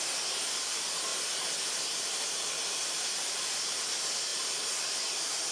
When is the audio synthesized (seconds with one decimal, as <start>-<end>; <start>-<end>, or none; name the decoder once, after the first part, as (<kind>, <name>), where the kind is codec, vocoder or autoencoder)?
none